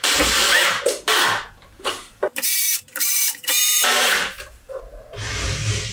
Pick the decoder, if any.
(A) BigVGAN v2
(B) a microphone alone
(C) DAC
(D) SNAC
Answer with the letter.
A